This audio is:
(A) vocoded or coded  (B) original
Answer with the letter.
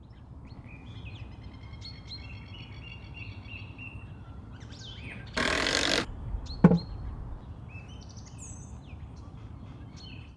B